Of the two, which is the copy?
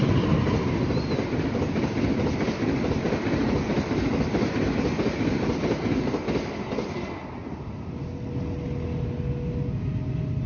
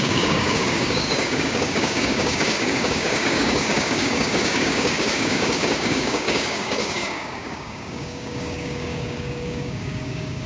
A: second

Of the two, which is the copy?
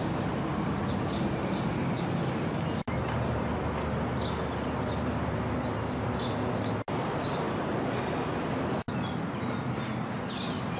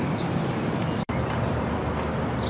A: second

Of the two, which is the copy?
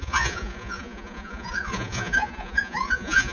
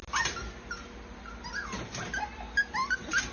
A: first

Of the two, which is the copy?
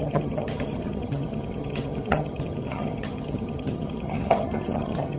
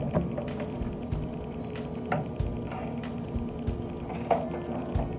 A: first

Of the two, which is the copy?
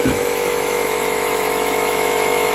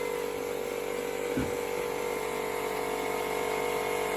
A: first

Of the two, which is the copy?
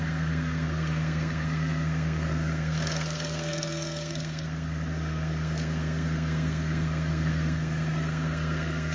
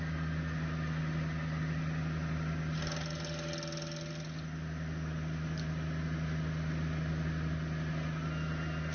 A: first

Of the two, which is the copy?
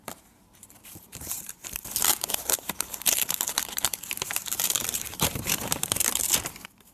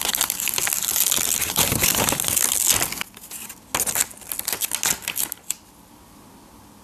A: first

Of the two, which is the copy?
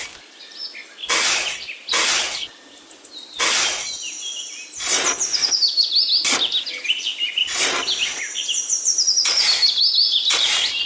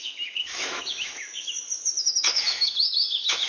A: second